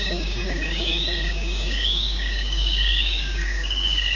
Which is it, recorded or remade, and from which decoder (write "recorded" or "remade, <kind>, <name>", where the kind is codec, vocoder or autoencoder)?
remade, codec, DAC